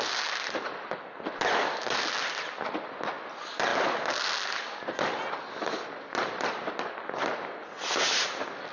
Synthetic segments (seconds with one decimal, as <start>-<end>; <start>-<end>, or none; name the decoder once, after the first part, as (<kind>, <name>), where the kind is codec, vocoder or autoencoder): none